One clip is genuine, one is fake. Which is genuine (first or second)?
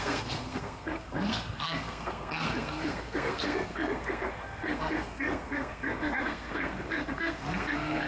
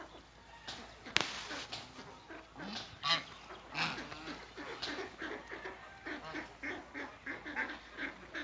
second